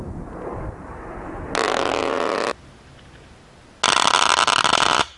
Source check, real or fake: real